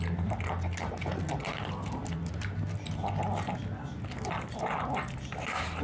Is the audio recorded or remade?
recorded